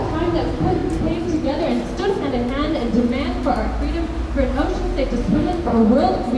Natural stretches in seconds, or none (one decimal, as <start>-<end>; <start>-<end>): 0.0-5.2; 5.8-6.4